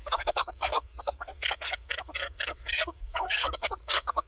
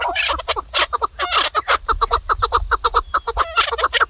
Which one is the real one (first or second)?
second